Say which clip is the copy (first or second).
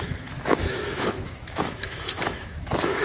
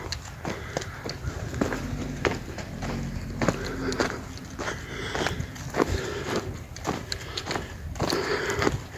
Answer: first